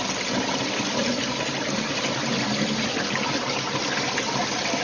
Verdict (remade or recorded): recorded